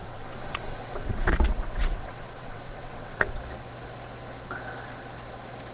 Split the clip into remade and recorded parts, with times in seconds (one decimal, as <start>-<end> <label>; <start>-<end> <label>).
0.0-3.4 remade; 3.4-5.7 recorded